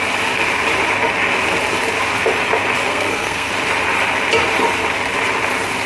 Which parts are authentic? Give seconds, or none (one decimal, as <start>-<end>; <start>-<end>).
0.0-2.9; 3.5-5.9